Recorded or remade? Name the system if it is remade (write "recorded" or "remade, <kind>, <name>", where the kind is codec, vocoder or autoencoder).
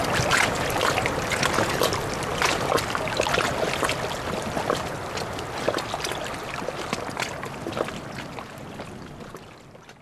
recorded